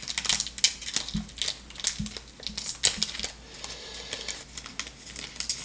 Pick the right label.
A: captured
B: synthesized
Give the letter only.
A